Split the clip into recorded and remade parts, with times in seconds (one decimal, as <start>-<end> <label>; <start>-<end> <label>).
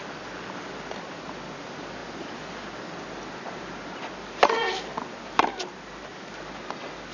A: 0.0-7.1 recorded